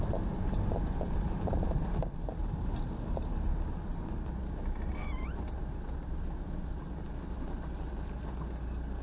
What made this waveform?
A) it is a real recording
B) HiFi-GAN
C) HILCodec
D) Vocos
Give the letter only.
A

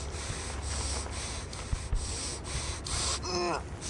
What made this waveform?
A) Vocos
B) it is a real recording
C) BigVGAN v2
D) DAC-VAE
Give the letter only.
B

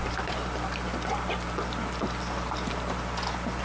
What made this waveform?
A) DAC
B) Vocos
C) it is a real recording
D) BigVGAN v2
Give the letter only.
C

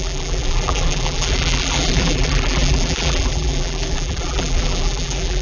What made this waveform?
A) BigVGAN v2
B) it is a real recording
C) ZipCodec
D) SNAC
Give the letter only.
A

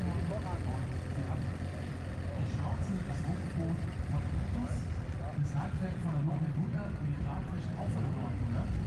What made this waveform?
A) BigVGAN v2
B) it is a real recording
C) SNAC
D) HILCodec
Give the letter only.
B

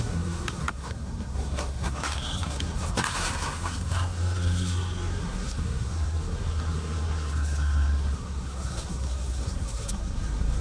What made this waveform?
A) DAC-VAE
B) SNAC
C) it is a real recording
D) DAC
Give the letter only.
B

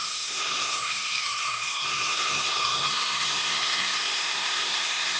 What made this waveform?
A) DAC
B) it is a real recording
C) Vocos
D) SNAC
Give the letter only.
D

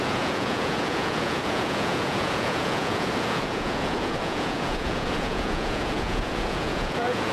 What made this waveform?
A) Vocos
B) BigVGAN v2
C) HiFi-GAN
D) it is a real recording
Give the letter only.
A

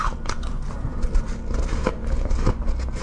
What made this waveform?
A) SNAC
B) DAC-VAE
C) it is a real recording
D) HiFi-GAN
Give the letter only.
C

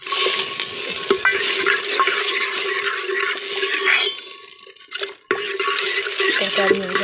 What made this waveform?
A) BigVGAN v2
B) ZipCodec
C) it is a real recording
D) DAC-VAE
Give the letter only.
C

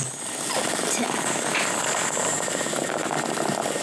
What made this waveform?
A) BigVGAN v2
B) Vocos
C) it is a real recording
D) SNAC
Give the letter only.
C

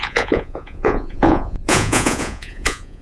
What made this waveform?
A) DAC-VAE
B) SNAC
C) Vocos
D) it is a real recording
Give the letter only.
C